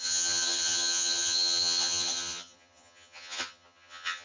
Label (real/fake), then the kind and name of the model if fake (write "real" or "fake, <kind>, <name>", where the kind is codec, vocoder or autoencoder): fake, vocoder, HiFi-GAN